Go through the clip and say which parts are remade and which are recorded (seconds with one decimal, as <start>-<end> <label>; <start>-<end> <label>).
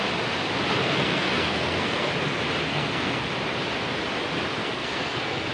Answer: 0.0-0.8 recorded; 0.8-2.1 remade; 2.1-2.7 recorded; 2.7-3.3 remade; 3.3-4.6 recorded; 4.6-5.5 remade